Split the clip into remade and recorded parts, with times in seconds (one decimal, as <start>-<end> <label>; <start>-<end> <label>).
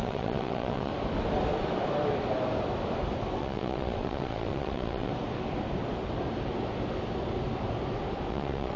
0.0-0.9 remade; 0.9-3.4 recorded; 3.4-5.1 remade; 5.1-8.3 recorded; 8.3-8.8 remade